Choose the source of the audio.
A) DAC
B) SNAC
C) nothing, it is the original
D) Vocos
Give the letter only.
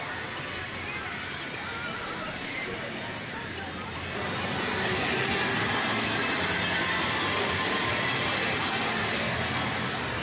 C